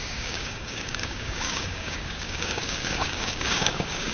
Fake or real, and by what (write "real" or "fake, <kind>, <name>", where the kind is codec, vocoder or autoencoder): fake, codec, DAC